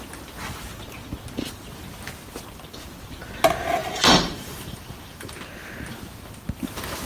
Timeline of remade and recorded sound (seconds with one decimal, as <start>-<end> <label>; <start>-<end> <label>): 0.0-3.8 recorded; 3.8-5.3 remade; 5.3-7.0 recorded